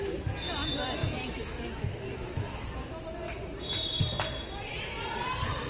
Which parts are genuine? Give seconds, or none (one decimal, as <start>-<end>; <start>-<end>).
0.0-1.0; 2.6-5.7